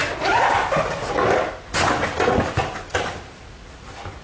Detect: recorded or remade recorded